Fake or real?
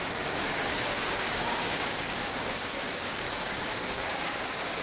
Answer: fake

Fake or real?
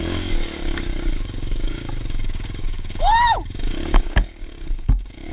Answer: fake